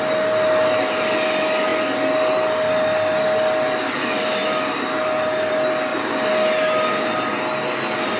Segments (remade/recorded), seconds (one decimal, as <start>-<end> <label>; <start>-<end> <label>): 0.0-8.2 recorded